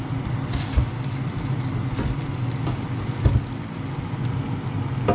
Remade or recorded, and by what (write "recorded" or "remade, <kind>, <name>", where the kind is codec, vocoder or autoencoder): recorded